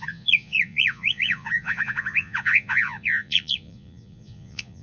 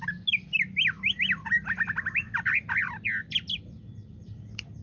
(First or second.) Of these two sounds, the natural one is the second